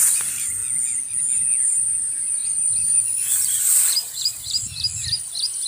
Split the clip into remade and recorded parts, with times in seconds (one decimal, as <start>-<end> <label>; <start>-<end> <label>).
0.0-0.6 remade; 0.6-1.7 recorded; 1.7-5.7 remade